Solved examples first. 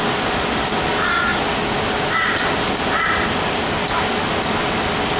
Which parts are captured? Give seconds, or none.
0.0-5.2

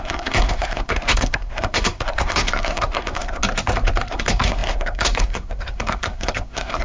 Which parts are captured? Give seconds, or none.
3.4-4.1

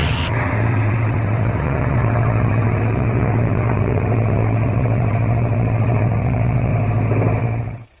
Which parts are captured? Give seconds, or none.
6.7-7.4

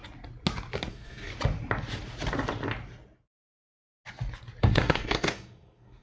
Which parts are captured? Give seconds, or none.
0.0-0.9; 1.3-4.6

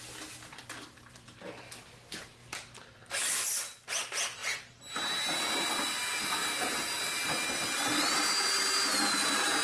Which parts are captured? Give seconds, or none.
0.0-9.6

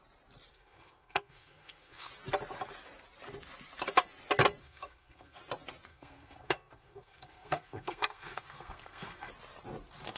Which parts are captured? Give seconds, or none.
0.0-0.5; 2.1-4.6; 5.4-5.9; 9.3-10.2

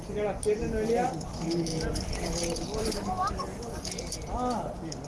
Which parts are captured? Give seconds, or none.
0.0-5.1

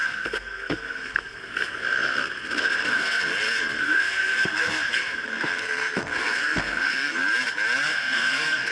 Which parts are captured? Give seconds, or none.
3.2-3.8; 7.2-7.9